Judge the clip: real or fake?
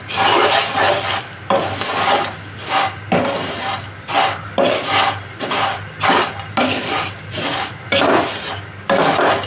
real